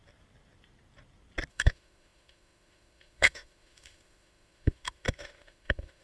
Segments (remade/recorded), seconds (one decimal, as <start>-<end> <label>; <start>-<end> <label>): 0.0-1.5 recorded; 1.5-6.0 remade

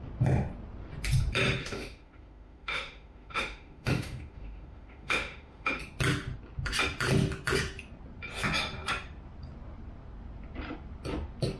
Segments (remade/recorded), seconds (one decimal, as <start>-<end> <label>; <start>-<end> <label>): 0.0-1.6 recorded; 1.6-5.8 remade; 5.8-11.6 recorded